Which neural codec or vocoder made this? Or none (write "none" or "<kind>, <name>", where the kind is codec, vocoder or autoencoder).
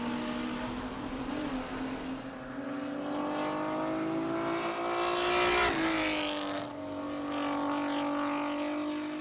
none